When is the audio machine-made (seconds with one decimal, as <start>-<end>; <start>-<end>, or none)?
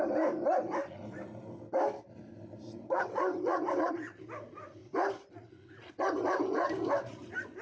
2.8-3.9